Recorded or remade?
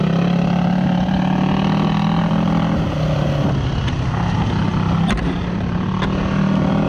recorded